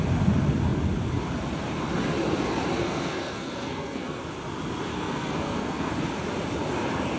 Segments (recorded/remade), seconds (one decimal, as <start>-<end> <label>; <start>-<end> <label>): 0.0-2.8 recorded; 2.8-4.2 remade; 4.2-4.9 recorded; 4.9-5.9 remade; 5.9-7.2 recorded